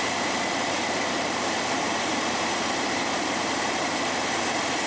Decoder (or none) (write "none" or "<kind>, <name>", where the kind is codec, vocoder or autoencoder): vocoder, BigVGAN v2